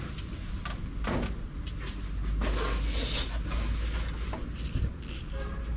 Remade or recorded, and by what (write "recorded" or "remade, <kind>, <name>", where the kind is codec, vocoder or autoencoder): recorded